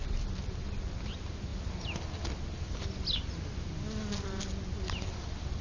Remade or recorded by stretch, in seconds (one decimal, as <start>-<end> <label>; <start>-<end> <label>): 0.0-5.6 recorded